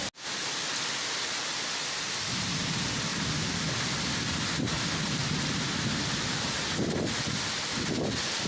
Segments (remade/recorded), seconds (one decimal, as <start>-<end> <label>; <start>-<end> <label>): 0.0-3.1 recorded; 3.1-3.7 remade; 3.7-8.5 recorded